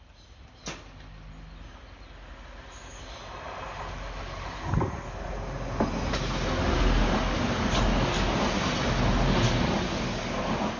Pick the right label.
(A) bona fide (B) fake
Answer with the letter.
A